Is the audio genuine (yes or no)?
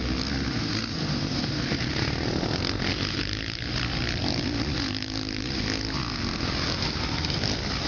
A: yes